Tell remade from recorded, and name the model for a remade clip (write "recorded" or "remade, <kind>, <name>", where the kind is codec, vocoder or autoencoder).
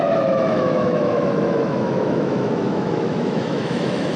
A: remade, autoencoder, DAC-VAE